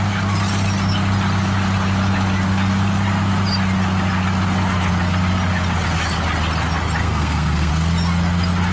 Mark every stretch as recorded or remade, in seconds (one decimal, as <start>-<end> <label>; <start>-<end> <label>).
0.0-7.0 recorded; 7.0-7.7 remade; 7.7-8.7 recorded